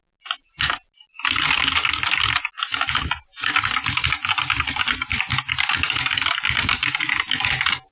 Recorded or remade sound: recorded